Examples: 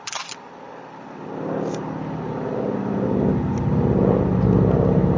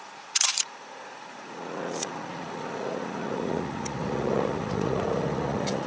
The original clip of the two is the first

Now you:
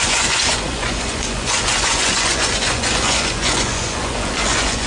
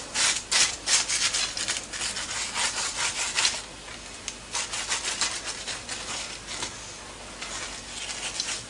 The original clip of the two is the second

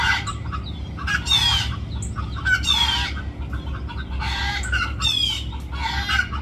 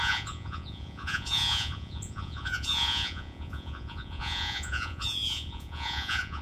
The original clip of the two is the first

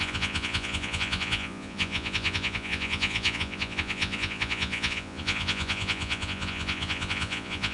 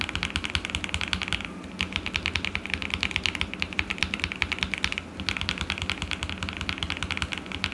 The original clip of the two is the second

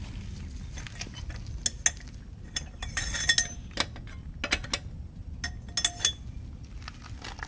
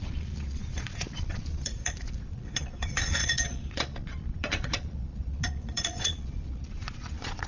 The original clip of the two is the first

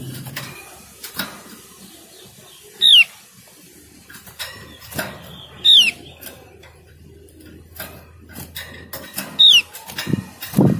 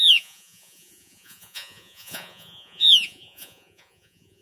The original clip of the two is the first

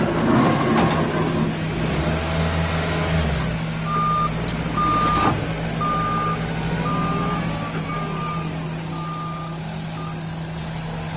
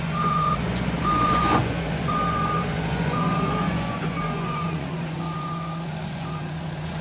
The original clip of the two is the first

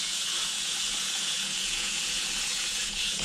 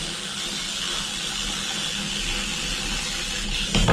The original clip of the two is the second